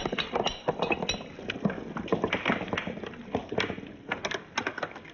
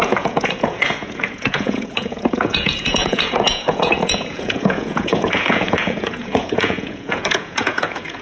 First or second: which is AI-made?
second